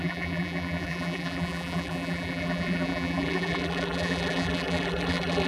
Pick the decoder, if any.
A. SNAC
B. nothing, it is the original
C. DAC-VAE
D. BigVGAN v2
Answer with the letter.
D